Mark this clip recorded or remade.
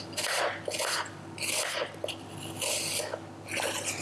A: recorded